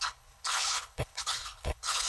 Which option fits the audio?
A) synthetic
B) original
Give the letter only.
A